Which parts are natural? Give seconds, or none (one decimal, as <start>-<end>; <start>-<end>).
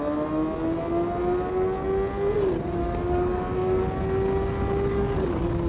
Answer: 0.0-2.8; 3.8-4.9